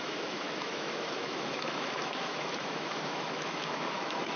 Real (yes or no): no